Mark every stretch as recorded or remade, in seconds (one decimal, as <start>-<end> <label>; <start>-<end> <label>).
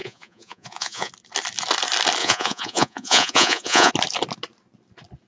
0.0-1.1 remade; 1.1-2.2 recorded; 2.2-3.9 remade; 3.9-5.3 recorded